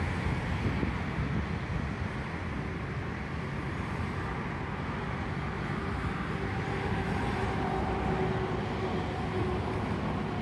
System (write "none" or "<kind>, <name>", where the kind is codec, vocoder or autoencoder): none